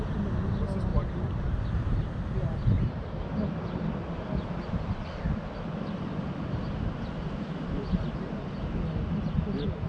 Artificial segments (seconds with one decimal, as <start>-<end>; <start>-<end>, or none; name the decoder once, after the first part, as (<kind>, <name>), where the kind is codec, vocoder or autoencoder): 0.9-3.3 (vocoder, BigVGAN v2)